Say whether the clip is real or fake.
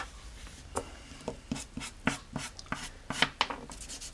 real